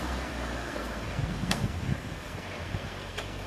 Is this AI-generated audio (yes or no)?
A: yes